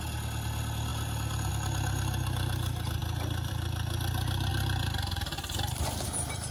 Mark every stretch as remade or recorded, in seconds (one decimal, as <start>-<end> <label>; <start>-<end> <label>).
0.0-0.9 recorded; 0.9-1.5 remade; 1.5-4.5 recorded; 4.5-6.5 remade